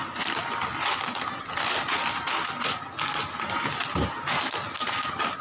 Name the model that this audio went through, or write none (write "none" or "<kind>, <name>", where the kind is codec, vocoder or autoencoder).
none